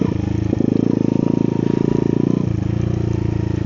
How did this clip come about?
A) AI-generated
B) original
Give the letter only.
B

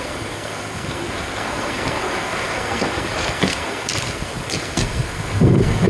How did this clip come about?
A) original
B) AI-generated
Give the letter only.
B